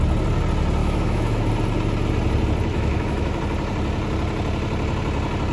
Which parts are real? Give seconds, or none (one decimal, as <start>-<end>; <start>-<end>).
0.0-0.8; 1.5-2.7; 3.4-5.5